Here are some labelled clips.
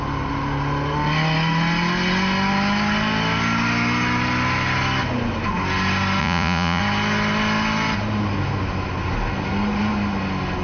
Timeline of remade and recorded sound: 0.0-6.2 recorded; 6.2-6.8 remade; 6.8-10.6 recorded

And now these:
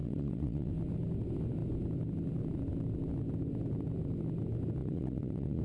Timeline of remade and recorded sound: 0.0-0.7 remade; 0.7-4.8 recorded; 4.8-5.6 remade

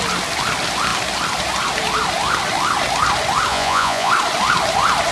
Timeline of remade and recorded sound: 0.0-3.5 recorded; 3.5-4.1 remade; 4.1-5.1 recorded

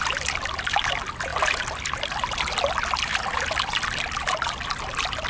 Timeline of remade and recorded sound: 0.0-5.3 recorded

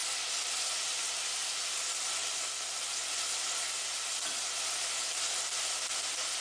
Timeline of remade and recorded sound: 0.0-6.4 recorded

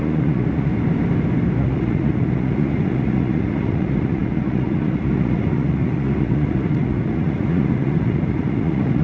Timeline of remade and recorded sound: 0.0-0.7 remade; 0.7-1.6 recorded; 1.6-9.0 remade

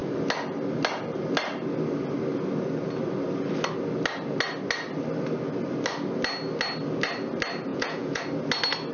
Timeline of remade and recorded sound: 0.0-7.7 recorded; 7.7-8.2 remade; 8.2-8.9 recorded